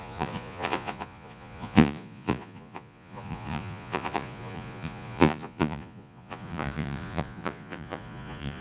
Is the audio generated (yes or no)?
yes